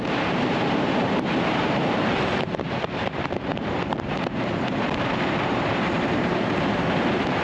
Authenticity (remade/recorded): remade